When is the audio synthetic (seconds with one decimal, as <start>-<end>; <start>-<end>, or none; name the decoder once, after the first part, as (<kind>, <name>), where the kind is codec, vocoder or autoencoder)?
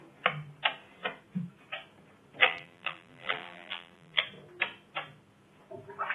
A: 2.4-4.2 (vocoder, BigVGAN v2)